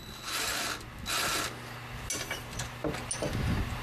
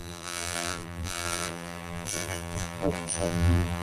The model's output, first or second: second